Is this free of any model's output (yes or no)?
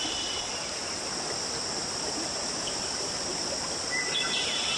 yes